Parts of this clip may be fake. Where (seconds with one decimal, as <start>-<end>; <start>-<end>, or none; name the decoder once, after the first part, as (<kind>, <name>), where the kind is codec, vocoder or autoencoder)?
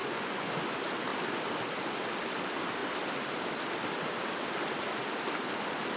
0.0-0.5 (vocoder, Vocos)